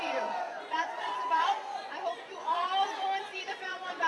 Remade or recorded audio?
remade